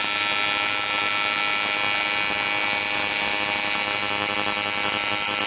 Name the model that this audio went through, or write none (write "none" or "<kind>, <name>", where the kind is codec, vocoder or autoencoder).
none